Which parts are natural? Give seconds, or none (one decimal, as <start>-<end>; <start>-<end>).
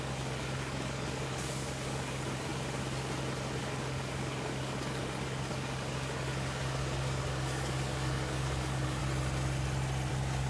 2.5-3.6; 9.0-10.1